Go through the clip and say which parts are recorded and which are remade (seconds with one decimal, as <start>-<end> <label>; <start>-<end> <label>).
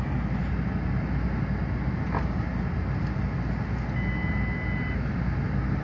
0.0-5.8 recorded